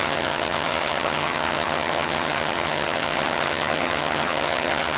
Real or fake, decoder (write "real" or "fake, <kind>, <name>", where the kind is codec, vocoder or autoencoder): fake, vocoder, HiFi-GAN